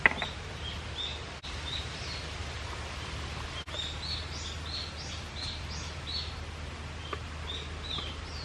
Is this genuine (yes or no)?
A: yes